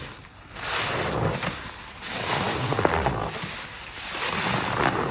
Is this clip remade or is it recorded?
recorded